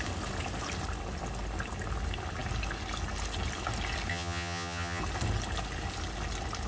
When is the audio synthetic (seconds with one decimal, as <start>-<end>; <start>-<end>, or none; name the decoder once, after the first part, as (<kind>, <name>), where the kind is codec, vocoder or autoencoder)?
4.1-5.0 (vocoder, HiFi-GAN)